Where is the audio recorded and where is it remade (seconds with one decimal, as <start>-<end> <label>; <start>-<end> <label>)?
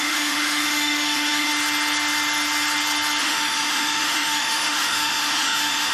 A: 0.0-1.5 remade; 1.5-3.2 recorded; 3.2-5.9 remade